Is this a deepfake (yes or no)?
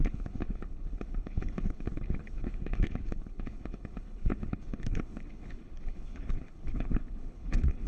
yes